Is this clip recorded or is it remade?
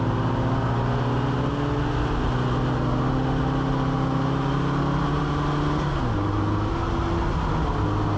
recorded